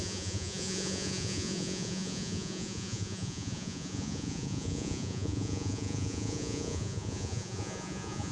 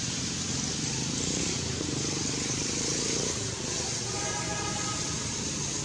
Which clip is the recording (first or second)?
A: second